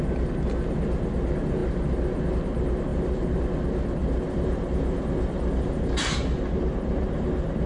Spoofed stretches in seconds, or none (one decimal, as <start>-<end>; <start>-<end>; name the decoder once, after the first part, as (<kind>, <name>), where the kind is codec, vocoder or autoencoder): 2.9-3.4 (vocoder, BigVGAN v2); 4.0-7.7